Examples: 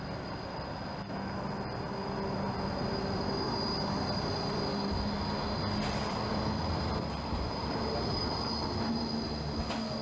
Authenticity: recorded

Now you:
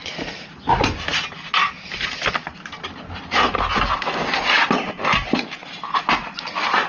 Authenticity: recorded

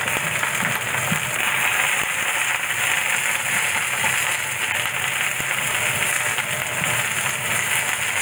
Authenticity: recorded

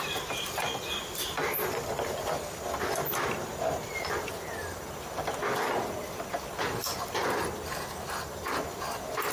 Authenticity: recorded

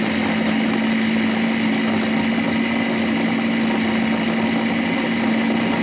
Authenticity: recorded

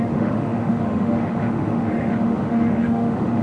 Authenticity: remade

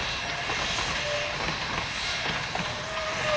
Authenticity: recorded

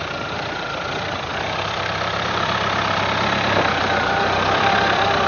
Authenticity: remade